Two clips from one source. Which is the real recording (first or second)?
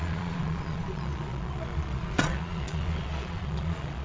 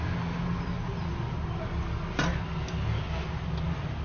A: second